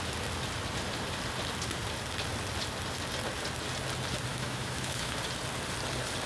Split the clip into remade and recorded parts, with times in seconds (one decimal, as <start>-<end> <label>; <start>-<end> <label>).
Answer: 0.0-4.3 recorded; 4.3-5.1 remade; 5.1-6.3 recorded